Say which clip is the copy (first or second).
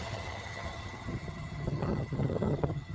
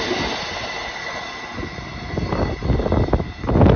first